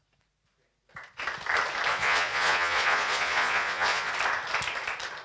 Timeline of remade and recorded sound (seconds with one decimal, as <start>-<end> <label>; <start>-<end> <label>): 0.0-1.9 recorded; 1.9-4.1 remade; 4.1-5.2 recorded